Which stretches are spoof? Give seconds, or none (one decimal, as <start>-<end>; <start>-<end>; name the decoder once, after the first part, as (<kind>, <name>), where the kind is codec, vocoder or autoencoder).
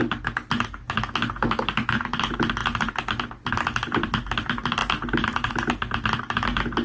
none